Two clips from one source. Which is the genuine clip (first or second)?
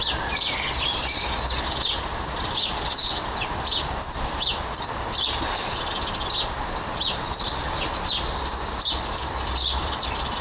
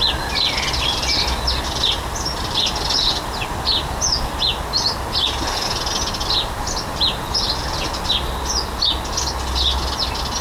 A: second